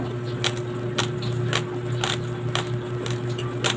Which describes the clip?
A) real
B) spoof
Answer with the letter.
A